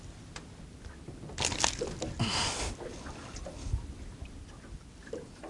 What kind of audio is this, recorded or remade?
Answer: recorded